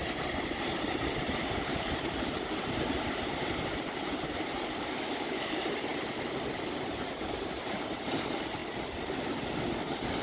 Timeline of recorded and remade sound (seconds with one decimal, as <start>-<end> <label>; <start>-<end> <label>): 0.0-8.6 remade; 8.6-10.2 recorded